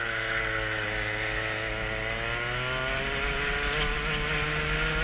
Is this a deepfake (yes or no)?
no